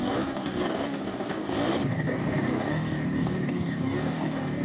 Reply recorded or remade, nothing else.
remade